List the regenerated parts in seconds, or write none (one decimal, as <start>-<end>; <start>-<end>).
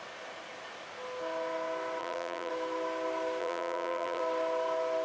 2.0-2.5; 3.4-4.2